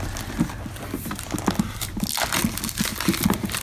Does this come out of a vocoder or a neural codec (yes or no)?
no